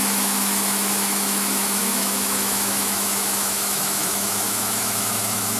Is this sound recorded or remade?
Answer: remade